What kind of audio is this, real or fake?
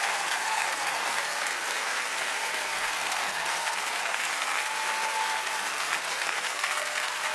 fake